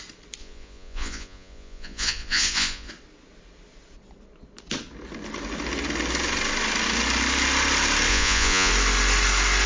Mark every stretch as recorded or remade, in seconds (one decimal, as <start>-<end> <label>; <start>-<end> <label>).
0.0-0.4 recorded; 0.4-2.9 remade; 2.9-8.1 recorded; 8.1-8.7 remade; 8.7-9.7 recorded